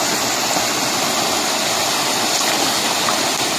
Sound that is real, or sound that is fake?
real